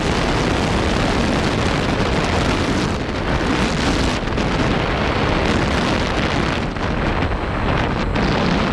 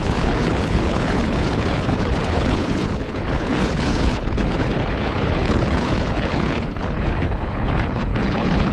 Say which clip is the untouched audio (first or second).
first